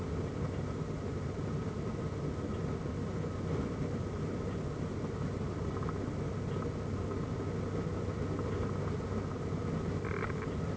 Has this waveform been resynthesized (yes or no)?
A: no